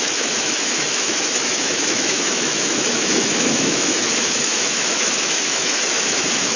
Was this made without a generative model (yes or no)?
no